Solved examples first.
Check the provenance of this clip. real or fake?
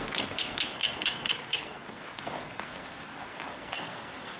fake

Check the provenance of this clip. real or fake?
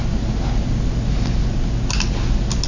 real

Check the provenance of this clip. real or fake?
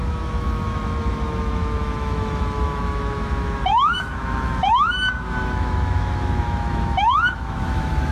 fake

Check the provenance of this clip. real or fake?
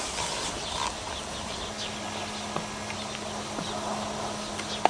real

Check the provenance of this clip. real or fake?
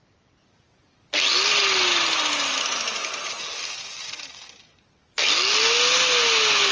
real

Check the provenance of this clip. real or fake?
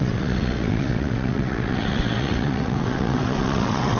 fake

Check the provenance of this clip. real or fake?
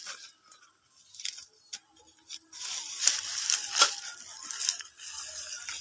real